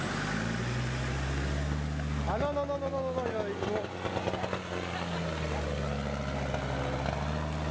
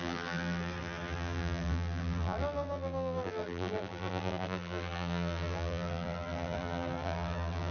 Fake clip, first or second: second